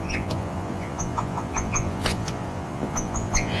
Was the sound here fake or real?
fake